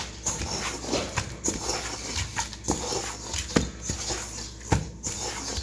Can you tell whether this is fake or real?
real